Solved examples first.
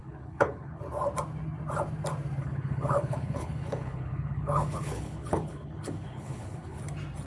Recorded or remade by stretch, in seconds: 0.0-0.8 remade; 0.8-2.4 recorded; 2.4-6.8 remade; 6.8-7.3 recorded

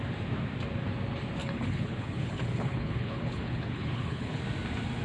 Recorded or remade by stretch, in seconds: 0.0-1.4 recorded; 1.4-4.4 remade; 4.4-5.0 recorded

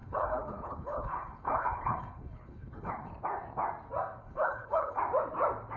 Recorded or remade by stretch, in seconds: 0.0-3.1 remade; 3.1-4.2 recorded; 4.2-5.0 remade; 5.0-5.8 recorded